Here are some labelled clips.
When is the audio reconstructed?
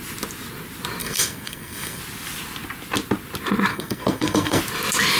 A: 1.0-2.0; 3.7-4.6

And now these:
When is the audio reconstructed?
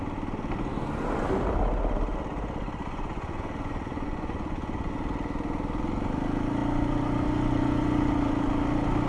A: 2.8-4.9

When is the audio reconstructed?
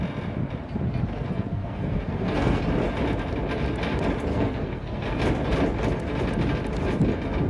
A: 1.1-2.6; 4.3-5.2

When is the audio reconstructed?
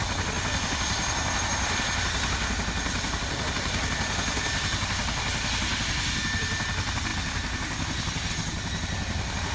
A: 7.1-8.3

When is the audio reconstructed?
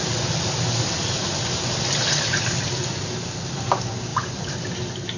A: none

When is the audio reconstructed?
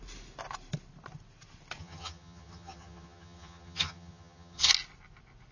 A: 1.8-4.7